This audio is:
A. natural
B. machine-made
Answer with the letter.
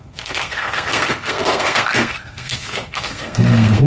B